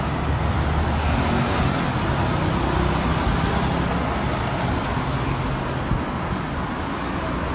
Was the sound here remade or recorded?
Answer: recorded